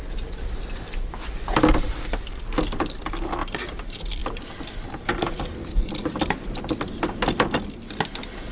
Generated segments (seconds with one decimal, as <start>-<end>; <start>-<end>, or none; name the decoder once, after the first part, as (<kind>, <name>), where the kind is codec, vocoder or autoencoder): none